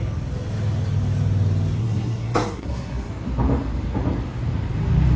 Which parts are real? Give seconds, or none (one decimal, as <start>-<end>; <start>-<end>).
0.0-1.8; 3.1-5.2